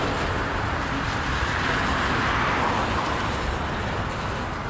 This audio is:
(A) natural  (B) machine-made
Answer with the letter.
A